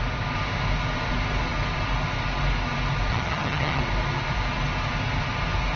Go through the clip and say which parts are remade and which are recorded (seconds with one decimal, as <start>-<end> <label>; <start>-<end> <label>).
0.0-3.1 recorded; 3.1-3.8 remade; 3.8-5.8 recorded